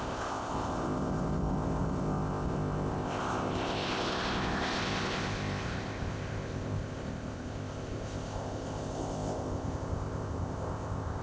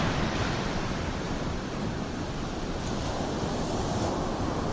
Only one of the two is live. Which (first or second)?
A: second